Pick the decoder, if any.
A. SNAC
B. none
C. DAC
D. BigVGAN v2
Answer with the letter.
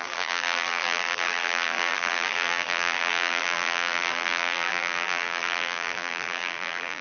D